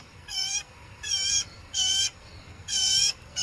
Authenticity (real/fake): fake